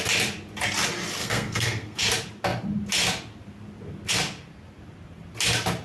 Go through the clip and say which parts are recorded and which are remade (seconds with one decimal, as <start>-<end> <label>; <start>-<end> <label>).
0.0-1.2 recorded; 1.2-2.0 remade; 2.0-5.8 recorded